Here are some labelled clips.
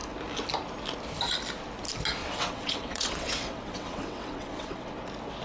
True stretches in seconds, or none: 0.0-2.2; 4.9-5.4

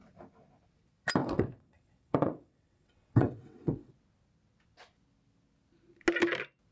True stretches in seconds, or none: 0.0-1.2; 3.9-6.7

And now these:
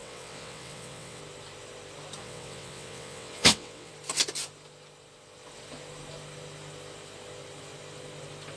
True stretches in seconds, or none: 1.2-2.2; 3.9-8.6

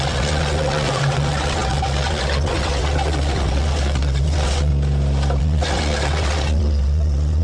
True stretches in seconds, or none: 4.7-5.4

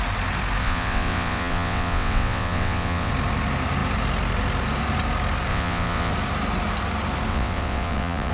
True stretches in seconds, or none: 0.0-0.6; 3.1-5.5; 6.1-7.3

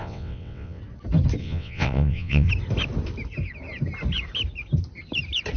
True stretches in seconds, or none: 0.8-1.4; 2.5-5.6

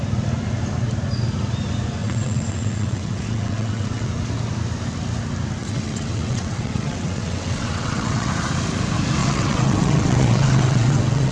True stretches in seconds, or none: 0.0-2.0; 4.1-5.6; 8.3-9.2

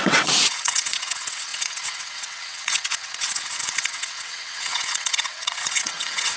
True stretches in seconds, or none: none